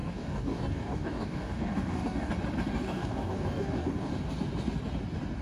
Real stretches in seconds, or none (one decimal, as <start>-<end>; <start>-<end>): 2.3-2.7; 4.1-5.4